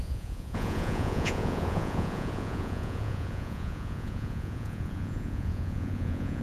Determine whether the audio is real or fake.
fake